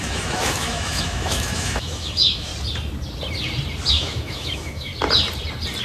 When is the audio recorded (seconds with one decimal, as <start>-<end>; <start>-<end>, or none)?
2.5-3.9; 4.9-5.8